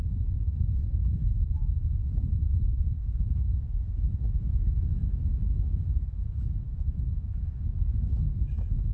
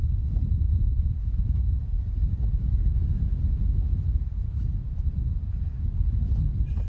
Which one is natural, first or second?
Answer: second